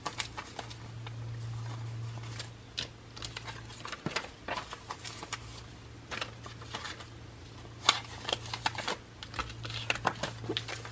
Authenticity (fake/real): real